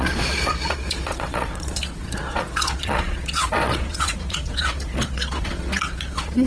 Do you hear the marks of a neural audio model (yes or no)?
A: yes